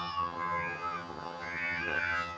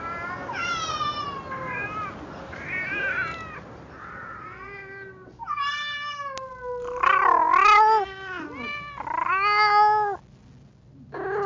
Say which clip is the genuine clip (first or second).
second